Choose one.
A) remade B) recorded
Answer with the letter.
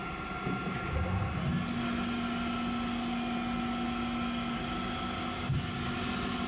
B